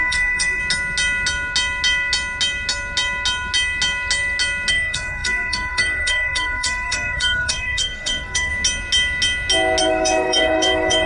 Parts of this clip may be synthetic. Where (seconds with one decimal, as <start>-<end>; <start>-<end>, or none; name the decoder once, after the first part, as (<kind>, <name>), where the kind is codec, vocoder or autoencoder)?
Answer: 0.0-0.6 (codec, SNAC); 4.7-8.5; 9.8-11.1